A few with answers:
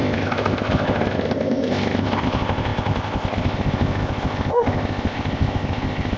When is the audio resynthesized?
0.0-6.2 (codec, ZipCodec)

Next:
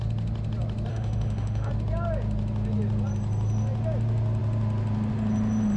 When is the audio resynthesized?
0.9-1.7 (autoencoder, DAC-VAE)